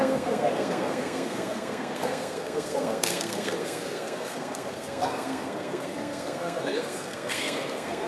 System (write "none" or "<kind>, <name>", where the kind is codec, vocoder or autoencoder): codec, SNAC